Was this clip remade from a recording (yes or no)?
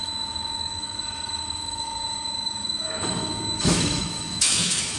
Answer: yes